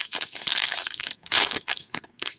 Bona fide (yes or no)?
no